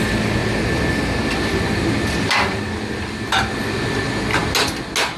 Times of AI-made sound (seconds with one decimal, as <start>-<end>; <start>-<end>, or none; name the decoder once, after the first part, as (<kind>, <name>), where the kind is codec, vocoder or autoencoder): none